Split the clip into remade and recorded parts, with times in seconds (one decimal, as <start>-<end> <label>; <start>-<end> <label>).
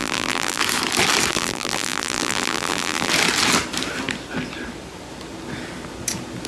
0.0-0.6 remade; 0.6-1.3 recorded; 1.3-3.1 remade; 3.1-6.5 recorded